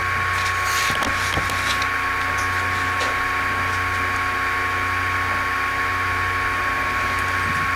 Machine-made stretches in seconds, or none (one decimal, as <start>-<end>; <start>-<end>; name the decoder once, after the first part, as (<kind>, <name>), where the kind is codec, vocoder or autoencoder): none